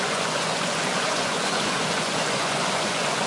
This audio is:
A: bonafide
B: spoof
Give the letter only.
B